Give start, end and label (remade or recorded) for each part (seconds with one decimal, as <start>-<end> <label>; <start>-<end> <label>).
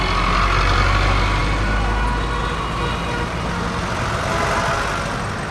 0.0-5.5 recorded